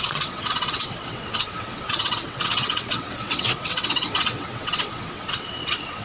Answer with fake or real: fake